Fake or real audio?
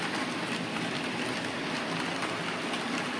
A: real